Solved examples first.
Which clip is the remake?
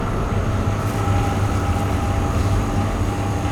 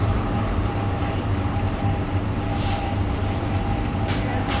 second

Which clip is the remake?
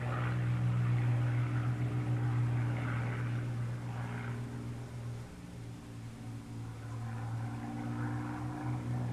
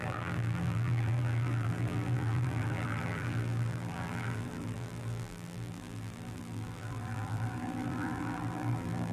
second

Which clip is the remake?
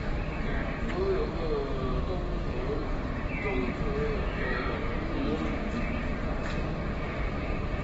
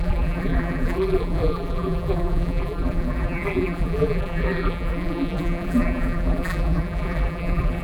second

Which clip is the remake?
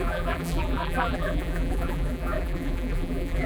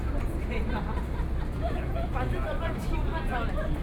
first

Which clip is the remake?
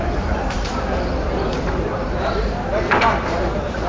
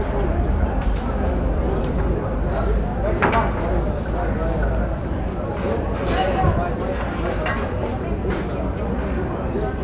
first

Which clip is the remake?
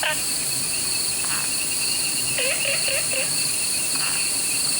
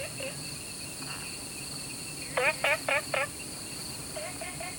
first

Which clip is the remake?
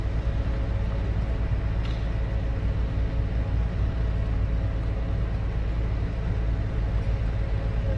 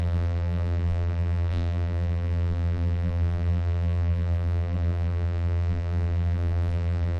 second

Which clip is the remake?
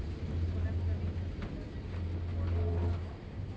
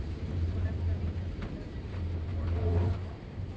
second